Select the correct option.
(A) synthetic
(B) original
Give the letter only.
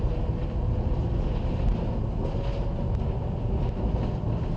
B